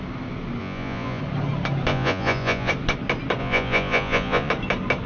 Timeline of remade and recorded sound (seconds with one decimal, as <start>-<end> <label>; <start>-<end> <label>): 0.0-0.6 recorded; 0.6-1.2 remade; 1.2-1.9 recorded; 1.9-2.7 remade; 2.7-3.4 recorded; 3.4-4.5 remade; 4.5-5.1 recorded